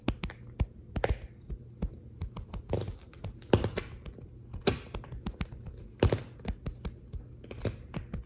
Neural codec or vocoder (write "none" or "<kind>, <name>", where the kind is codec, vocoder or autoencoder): none